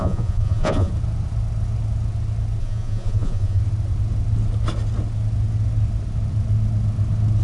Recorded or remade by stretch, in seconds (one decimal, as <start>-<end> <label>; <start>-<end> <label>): 0.0-0.9 remade; 0.9-2.6 recorded; 2.6-3.6 remade; 3.6-7.4 recorded